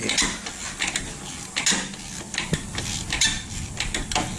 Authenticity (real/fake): real